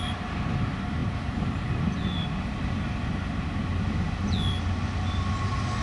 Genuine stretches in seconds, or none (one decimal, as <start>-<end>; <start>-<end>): 0.0-5.8